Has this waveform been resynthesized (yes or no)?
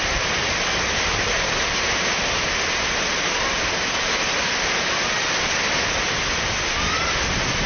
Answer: no